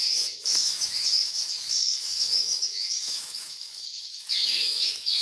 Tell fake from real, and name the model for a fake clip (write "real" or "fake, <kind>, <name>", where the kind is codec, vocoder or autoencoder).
fake, autoencoder, DAC-VAE